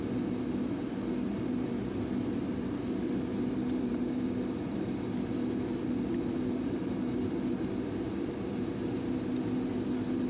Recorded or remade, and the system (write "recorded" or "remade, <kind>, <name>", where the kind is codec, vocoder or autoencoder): recorded